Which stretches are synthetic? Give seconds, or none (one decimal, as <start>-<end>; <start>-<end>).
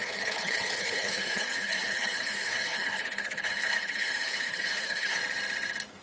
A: 0.0-5.2